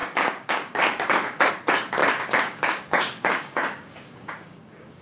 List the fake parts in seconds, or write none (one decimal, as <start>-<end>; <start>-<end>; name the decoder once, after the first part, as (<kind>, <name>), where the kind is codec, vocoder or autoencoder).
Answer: 0.0-1.5 (codec, DAC); 2.0-5.0